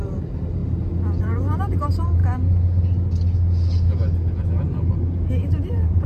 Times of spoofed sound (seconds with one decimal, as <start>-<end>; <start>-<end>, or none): 0.0-0.6; 1.2-2.2; 5.3-6.1